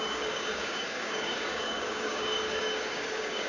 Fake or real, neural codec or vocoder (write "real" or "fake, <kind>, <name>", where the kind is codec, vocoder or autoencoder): fake, codec, DAC